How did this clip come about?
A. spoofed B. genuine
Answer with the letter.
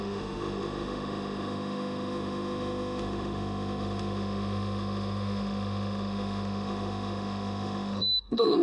A